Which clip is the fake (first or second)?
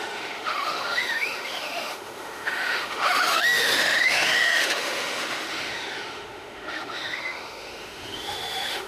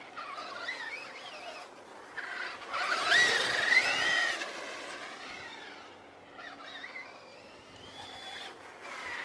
first